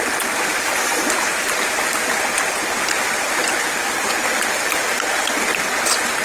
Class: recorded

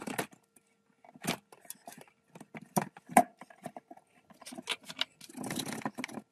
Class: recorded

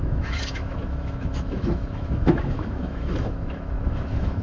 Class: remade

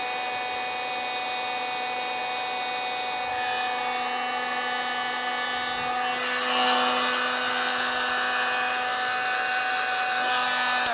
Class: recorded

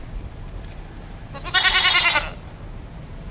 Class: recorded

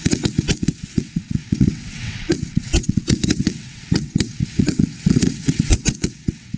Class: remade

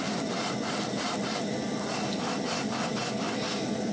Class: recorded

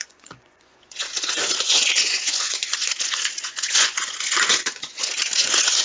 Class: remade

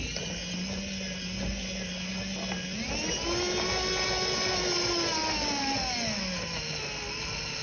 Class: recorded